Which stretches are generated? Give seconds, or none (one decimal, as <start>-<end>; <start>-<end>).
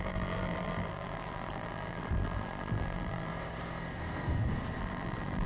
0.0-3.3; 4.8-5.5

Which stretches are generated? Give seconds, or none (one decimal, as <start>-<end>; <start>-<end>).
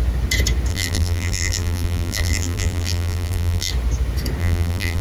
0.7-3.7; 4.4-5.0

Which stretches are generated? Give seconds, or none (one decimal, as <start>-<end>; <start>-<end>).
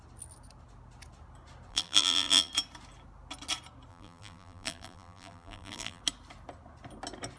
1.7-2.5; 3.9-6.0